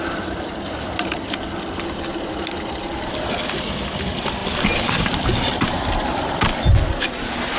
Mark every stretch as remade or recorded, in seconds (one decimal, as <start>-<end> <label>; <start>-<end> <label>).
0.0-4.4 recorded; 4.4-5.5 remade; 5.5-7.6 recorded